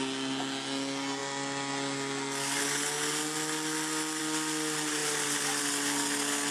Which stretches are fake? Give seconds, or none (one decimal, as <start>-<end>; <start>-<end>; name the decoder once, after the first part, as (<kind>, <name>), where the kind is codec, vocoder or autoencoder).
none